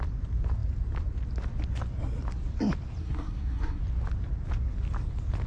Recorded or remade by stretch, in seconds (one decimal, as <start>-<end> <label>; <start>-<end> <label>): 0.0-3.0 recorded; 3.0-3.8 remade; 3.8-5.5 recorded